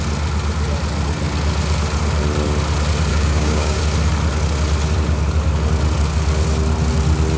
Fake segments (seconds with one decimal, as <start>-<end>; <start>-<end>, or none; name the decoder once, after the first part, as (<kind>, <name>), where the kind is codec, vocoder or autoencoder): 3.1-3.8 (codec, DAC)